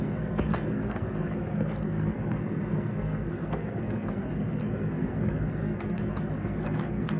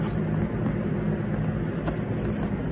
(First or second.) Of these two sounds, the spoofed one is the first